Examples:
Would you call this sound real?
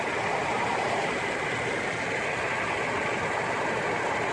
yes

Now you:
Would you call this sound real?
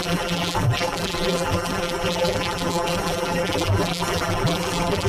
no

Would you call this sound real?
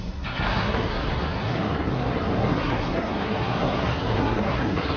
no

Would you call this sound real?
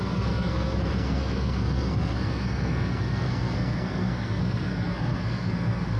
no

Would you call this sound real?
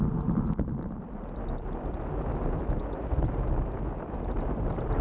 yes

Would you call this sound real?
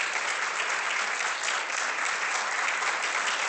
yes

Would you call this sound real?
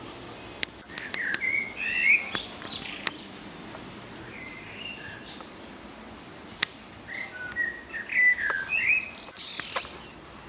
yes